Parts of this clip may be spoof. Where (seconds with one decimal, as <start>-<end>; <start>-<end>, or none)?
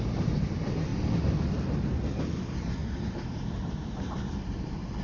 2.8-5.0